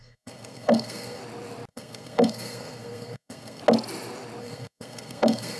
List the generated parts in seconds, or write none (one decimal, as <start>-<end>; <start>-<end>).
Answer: 0.0-1.2; 1.7-3.6; 4.4-5.6